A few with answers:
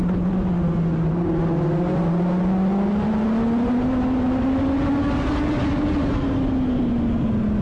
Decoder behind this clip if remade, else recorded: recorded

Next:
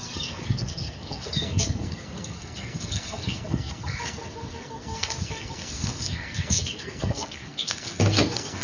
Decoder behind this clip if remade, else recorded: remade, codec, SNAC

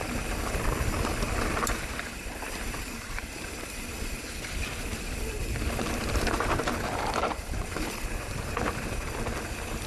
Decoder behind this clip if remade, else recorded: remade, vocoder, BigVGAN v2